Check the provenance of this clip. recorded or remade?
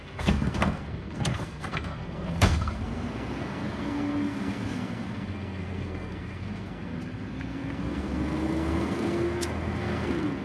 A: remade